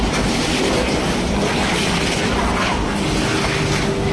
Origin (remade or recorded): recorded